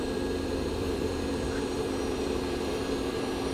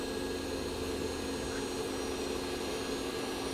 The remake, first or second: first